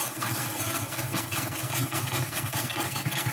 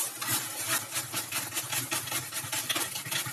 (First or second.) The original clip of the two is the second